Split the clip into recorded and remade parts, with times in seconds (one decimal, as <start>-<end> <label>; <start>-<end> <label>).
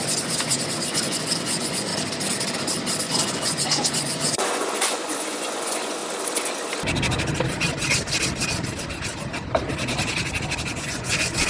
0.0-1.9 remade; 1.9-3.0 recorded; 3.0-6.0 remade; 6.0-10.8 recorded; 10.8-11.5 remade